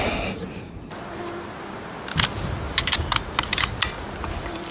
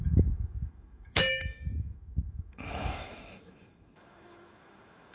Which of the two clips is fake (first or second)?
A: second